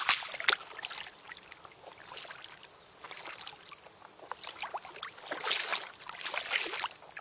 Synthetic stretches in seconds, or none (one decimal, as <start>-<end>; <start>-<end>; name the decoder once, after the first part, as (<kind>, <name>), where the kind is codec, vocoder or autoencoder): none